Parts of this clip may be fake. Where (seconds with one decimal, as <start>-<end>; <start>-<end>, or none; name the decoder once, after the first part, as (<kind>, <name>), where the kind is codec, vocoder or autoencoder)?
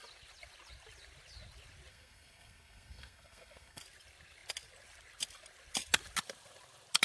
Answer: 1.9-3.8 (codec, SNAC)